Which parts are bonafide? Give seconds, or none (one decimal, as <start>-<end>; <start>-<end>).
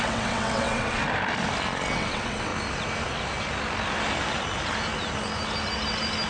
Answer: 1.0-1.9; 2.5-6.3